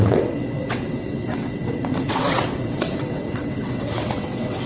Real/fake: fake